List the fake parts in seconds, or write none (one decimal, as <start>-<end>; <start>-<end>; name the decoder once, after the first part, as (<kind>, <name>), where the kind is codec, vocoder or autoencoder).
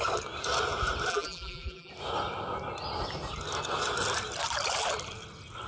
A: 1.1-1.9 (vocoder, BigVGAN v2)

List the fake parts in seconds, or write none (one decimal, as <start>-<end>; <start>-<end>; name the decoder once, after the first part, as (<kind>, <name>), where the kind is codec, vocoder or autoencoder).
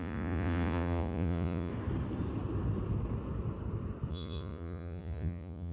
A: 0.0-1.7 (vocoder, Vocos); 4.1-5.7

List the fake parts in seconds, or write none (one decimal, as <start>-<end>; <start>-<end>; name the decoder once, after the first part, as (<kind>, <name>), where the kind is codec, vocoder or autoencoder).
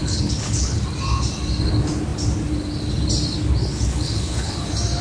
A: 0.0-0.8 (codec, HILCodec); 3.6-4.5